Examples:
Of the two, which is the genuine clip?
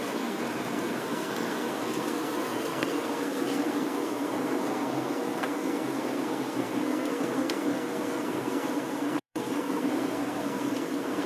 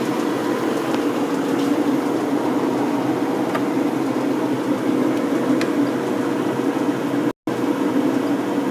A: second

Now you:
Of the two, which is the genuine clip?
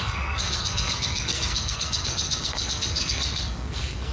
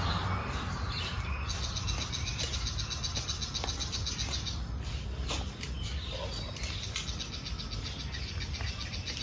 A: second